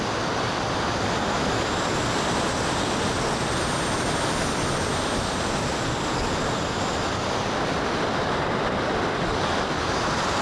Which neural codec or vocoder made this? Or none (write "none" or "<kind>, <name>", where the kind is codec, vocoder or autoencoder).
none